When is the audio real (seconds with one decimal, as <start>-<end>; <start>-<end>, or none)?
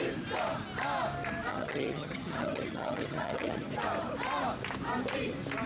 0.0-1.5; 3.7-5.7